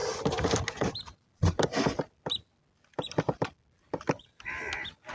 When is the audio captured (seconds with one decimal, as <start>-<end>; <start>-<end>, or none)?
0.0-5.1